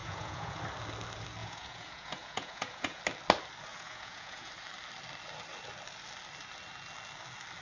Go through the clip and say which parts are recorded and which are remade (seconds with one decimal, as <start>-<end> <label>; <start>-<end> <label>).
0.0-0.6 remade; 0.6-1.4 recorded; 1.4-3.0 remade; 3.0-3.7 recorded; 3.7-4.5 remade; 4.5-7.6 recorded